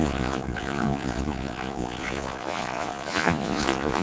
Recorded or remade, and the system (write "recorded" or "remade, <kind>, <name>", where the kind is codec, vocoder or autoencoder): remade, vocoder, Vocos